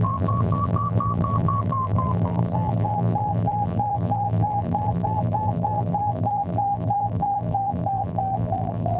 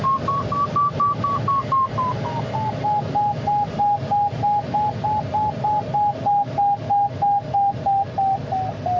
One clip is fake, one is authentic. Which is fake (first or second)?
first